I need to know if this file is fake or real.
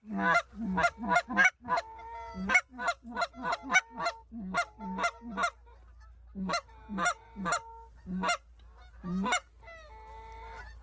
real